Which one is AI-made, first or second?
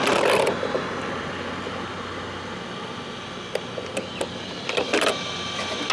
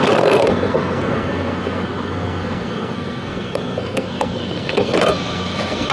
second